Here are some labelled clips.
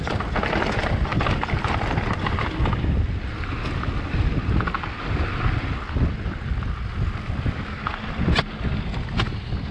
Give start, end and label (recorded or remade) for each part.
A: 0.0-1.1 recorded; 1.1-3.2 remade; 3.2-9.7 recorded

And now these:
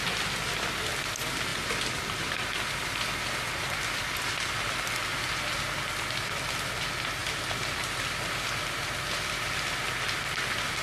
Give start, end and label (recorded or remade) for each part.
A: 0.0-10.8 recorded